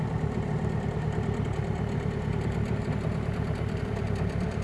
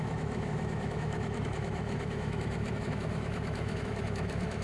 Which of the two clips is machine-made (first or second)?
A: second